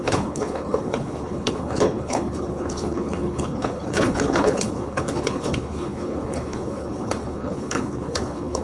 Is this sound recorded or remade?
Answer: remade